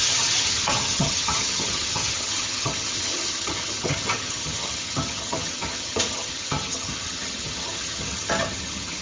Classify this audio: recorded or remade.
remade